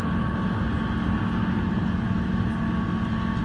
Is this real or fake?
real